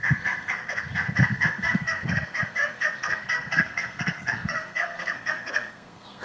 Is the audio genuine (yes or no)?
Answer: no